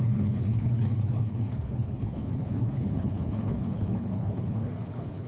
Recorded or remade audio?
remade